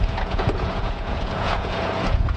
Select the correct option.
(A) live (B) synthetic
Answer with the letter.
B